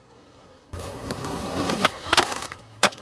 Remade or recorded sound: remade